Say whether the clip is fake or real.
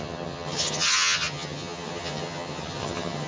fake